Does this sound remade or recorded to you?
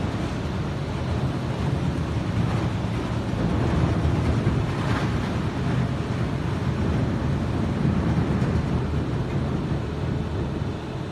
recorded